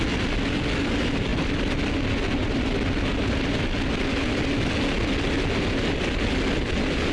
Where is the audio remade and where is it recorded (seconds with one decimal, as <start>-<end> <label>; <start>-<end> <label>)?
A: 0.0-7.1 recorded

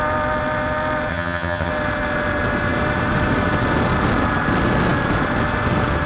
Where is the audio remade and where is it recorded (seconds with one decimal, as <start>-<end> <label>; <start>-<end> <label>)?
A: 0.0-1.1 recorded; 1.1-1.7 remade; 1.7-6.1 recorded

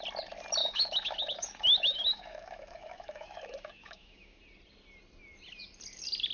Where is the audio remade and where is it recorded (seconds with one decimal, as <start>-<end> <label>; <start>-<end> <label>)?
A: 0.0-0.6 recorded; 0.6-4.4 remade; 4.4-6.3 recorded

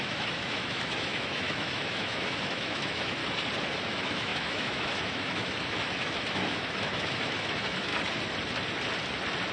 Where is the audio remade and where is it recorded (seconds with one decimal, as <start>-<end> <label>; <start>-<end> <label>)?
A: 0.0-3.2 remade; 3.2-3.8 recorded; 3.8-7.9 remade; 7.9-9.5 recorded

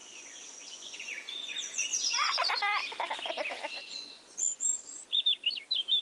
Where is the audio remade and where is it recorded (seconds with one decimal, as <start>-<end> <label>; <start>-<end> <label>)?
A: 0.0-2.5 remade; 2.5-3.8 recorded; 3.8-5.0 remade; 5.0-6.0 recorded

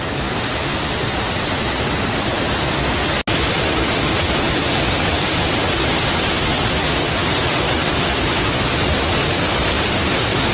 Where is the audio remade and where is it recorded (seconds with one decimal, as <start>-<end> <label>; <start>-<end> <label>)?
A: 0.0-10.5 recorded

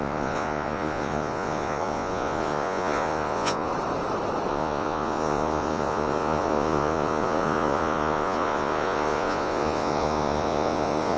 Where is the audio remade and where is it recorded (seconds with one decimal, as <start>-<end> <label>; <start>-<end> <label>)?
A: 0.0-3.7 remade; 3.7-4.5 recorded; 4.5-11.2 remade